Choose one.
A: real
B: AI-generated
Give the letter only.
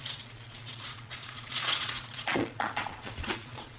B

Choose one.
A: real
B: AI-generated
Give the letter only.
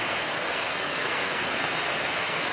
B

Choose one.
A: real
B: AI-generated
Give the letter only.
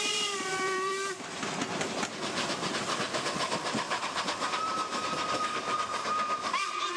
B